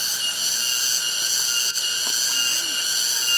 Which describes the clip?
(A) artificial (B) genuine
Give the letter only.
B